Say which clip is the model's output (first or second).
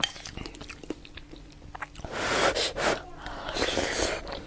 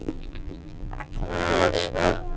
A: second